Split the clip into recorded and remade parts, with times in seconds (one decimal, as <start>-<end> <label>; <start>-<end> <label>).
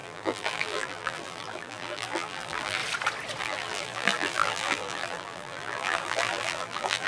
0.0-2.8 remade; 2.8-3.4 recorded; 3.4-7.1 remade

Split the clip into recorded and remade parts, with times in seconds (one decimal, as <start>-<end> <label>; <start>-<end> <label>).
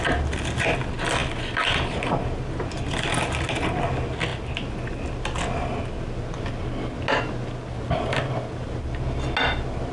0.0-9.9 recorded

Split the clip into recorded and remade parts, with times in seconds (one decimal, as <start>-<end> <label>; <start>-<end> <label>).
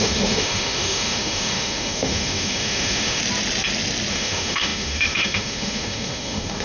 0.0-3.2 remade; 3.2-4.1 recorded; 4.1-6.6 remade